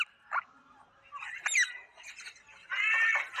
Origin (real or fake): real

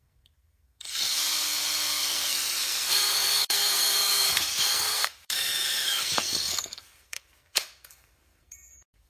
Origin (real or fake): fake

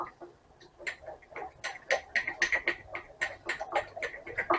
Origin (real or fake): real